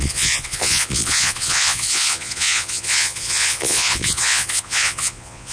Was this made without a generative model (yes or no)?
no